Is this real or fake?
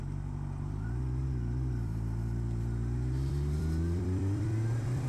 fake